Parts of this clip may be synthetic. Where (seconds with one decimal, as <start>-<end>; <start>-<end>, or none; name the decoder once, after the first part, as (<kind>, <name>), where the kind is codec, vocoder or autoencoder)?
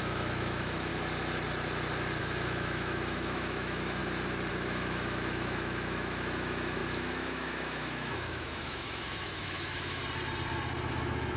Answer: 0.0-0.9 (autoencoder, DAC-VAE); 2.2-4.0; 4.5-10.0; 10.9-11.4